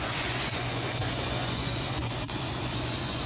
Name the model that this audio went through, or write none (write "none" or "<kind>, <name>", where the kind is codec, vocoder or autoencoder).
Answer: vocoder, Vocos